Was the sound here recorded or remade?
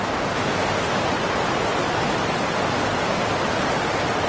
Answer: recorded